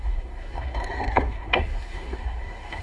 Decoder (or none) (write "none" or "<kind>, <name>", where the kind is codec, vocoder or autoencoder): codec, SNAC